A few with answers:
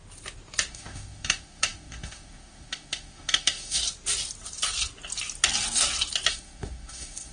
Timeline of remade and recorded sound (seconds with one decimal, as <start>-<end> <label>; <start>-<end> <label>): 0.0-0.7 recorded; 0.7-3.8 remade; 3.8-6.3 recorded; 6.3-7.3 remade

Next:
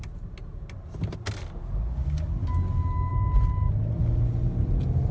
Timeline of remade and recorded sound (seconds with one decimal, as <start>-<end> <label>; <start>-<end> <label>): 0.0-5.1 recorded

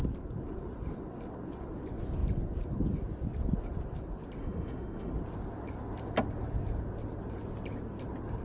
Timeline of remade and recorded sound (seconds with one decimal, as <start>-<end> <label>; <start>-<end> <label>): 0.0-4.4 recorded; 4.4-5.1 remade; 5.1-8.4 recorded

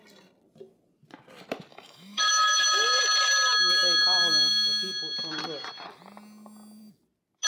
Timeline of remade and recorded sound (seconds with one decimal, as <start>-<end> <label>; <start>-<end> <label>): 0.0-1.7 recorded; 1.7-3.0 remade; 3.0-7.5 recorded

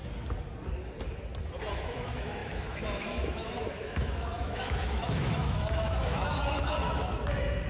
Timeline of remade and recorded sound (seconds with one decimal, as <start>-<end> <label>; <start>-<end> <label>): 0.0-1.7 recorded; 1.7-7.7 remade